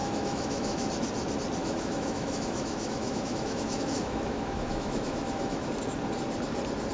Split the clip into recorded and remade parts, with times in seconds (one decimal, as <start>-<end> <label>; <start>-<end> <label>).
0.0-0.9 remade; 0.9-1.6 recorded; 1.6-5.7 remade; 5.7-6.9 recorded